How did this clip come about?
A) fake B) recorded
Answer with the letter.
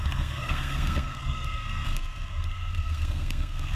A